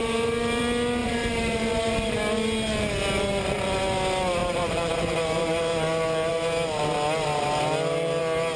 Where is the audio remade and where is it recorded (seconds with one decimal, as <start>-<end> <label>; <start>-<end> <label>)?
0.0-0.6 remade; 0.6-1.0 recorded; 1.0-2.2 remade; 2.2-4.4 recorded; 4.4-4.9 remade; 4.9-8.6 recorded